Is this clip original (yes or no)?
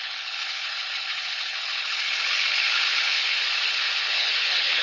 no